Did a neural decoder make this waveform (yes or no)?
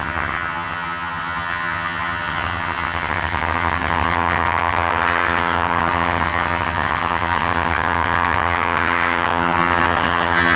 yes